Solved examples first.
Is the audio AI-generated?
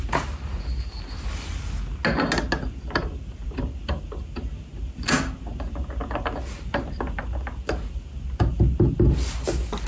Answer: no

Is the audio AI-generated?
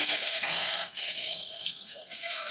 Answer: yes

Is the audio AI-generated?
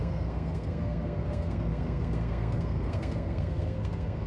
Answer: yes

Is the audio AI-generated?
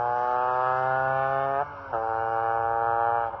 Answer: no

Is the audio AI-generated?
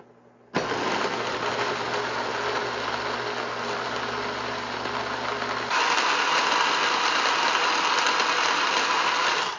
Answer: no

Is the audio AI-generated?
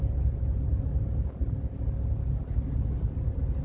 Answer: no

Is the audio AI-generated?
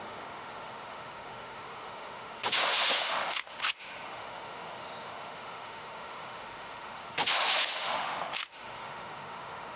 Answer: yes